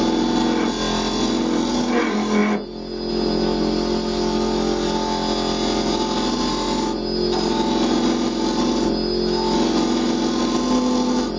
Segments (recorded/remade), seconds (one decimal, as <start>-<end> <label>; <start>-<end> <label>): 0.0-11.4 recorded